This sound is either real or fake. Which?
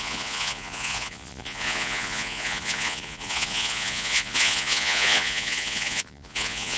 fake